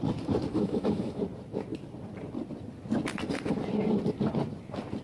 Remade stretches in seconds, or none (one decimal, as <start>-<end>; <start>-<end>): 0.5-1.2